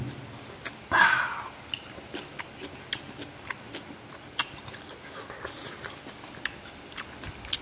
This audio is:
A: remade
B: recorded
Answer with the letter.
B